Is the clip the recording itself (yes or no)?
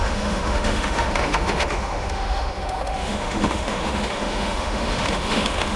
no